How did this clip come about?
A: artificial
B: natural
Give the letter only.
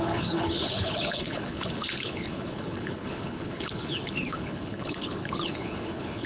A